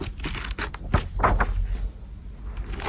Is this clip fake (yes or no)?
no